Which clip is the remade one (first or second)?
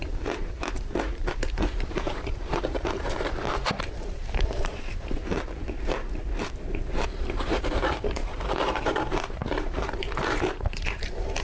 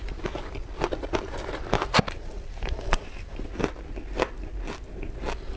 first